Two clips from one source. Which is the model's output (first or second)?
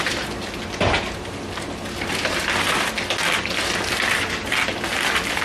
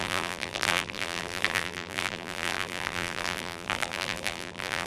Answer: second